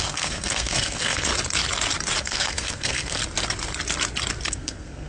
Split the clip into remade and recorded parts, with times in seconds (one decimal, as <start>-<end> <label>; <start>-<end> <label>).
0.0-1.3 remade; 1.3-2.2 recorded; 2.2-3.2 remade; 3.2-4.5 recorded; 4.5-5.1 remade